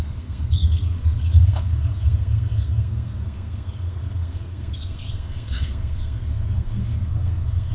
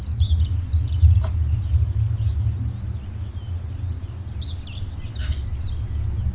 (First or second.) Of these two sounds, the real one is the second